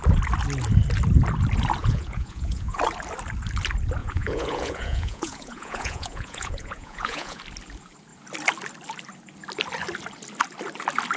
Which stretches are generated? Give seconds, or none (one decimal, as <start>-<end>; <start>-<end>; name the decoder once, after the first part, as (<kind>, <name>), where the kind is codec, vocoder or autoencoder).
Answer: 1.8-2.8 (vocoder, Vocos); 4.0-7.4